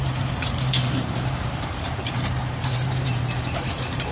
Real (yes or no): no